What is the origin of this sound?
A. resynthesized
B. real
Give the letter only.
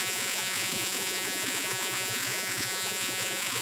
A